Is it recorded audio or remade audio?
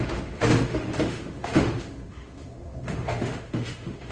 remade